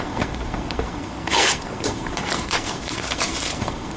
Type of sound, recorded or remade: remade